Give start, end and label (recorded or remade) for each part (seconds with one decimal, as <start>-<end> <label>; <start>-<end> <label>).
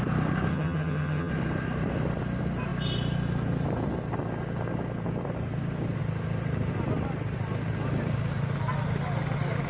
0.0-0.5 recorded; 0.5-1.3 remade; 1.3-9.7 recorded